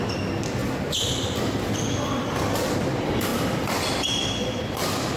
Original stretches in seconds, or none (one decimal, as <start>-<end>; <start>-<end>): 0.0-5.2